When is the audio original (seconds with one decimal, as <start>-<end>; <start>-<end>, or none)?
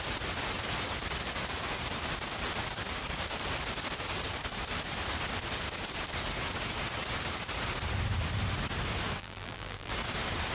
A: 0.0-9.2; 9.9-10.5